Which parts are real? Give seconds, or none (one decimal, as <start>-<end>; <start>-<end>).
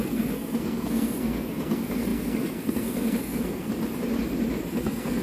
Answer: 3.7-4.8